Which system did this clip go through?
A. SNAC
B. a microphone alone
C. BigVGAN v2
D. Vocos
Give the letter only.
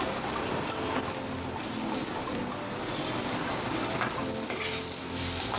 C